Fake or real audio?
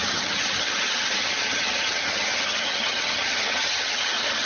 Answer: fake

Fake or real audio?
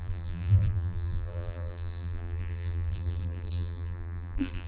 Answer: fake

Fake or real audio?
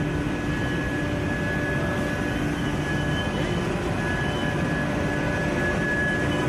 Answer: real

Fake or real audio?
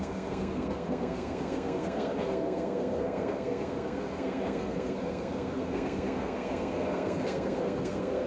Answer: fake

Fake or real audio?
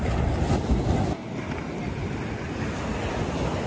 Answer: real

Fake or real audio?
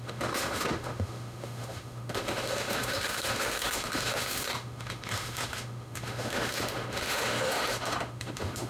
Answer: fake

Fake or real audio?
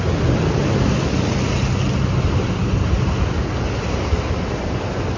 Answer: real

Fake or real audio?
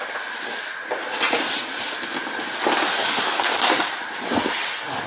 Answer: real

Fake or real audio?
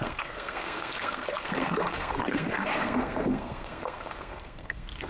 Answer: fake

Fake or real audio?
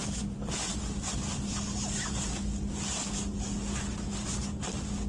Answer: real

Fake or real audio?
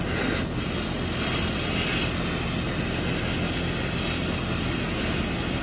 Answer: real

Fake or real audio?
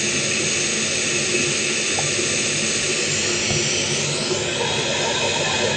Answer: real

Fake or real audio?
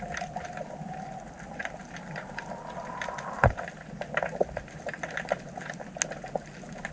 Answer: real